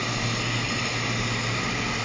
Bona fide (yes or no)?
yes